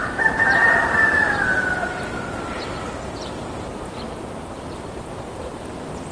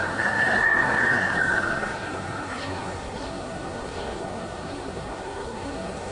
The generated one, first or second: second